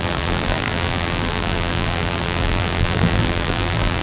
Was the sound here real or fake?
fake